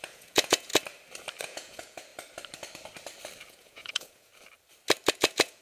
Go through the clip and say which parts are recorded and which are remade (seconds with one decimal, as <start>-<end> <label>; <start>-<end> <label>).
0.0-0.7 remade; 0.7-1.4 recorded; 1.4-2.1 remade; 2.1-3.5 recorded; 3.5-4.3 remade; 4.3-5.1 recorded; 5.1-5.6 remade